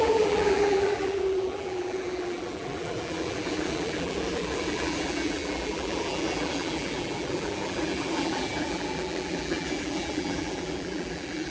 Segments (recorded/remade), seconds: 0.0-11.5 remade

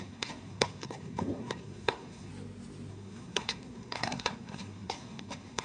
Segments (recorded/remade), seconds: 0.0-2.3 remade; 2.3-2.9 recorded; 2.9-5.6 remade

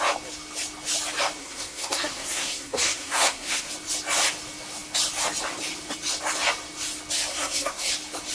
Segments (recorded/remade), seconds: 0.0-1.4 recorded; 1.4-3.7 remade; 3.7-7.3 recorded; 7.3-7.9 remade; 7.9-8.3 recorded